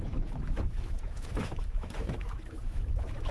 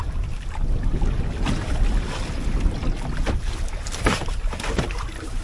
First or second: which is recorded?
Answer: second